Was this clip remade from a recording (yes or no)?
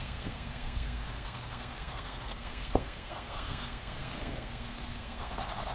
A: yes